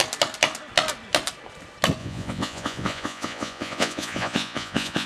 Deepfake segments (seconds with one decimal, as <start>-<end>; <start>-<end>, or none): 2.0-5.1